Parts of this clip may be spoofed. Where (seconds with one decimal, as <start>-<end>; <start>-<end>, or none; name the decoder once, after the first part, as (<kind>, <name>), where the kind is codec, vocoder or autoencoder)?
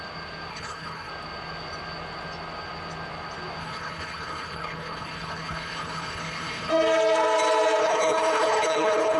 0.5-1.1 (codec, HILCodec); 3.6-6.7; 7.8-9.2